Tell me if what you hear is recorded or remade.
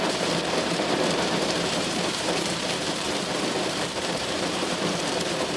remade